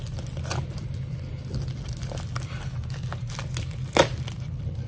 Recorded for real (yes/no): yes